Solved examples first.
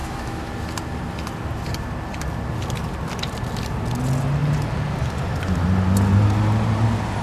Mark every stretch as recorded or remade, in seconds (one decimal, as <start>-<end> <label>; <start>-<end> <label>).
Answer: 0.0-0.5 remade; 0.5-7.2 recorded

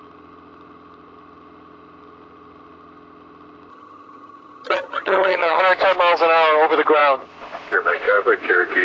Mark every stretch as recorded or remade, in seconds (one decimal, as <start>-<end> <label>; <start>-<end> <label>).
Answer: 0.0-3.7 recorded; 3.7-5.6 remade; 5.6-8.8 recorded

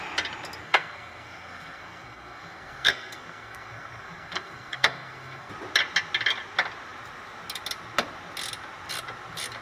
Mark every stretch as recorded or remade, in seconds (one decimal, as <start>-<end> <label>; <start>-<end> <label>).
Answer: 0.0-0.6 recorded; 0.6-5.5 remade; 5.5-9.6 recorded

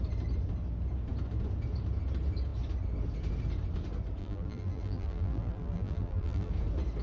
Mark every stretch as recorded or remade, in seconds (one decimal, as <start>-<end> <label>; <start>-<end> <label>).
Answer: 0.0-4.2 recorded; 4.2-6.5 remade; 6.5-7.0 recorded